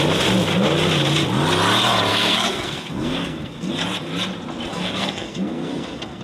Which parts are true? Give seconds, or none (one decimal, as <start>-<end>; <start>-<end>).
0.0-2.1; 3.7-4.7